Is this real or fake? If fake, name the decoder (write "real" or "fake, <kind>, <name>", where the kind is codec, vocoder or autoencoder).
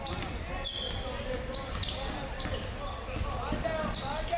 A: real